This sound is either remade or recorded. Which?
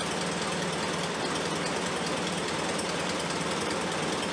recorded